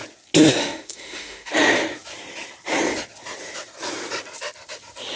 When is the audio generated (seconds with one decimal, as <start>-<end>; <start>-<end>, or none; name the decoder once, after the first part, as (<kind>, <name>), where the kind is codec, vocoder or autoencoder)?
0.6-1.5 (autoencoder, DAC-VAE)